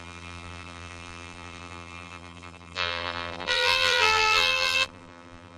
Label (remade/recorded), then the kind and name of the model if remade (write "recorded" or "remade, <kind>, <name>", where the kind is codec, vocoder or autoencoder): remade, vocoder, BigVGAN v2